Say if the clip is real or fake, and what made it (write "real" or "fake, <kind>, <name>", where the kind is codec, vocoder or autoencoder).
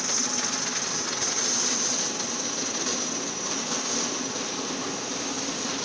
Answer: real